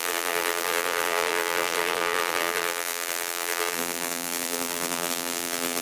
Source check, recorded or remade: remade